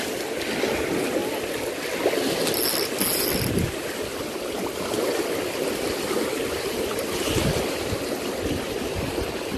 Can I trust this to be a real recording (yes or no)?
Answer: yes